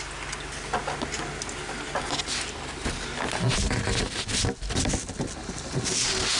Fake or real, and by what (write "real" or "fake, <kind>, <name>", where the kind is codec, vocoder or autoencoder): real